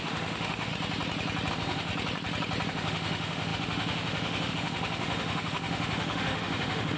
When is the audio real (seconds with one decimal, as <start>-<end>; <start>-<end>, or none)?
0.7-1.5; 1.9-2.7